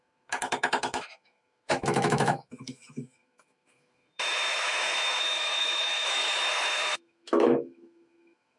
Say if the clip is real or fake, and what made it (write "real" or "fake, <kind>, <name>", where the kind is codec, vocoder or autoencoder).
fake, autoencoder, DAC-VAE